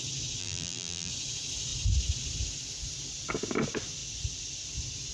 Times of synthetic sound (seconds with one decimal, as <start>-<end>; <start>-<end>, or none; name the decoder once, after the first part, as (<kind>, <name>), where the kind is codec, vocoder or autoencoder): 0.4-1.1 (vocoder, BigVGAN v2)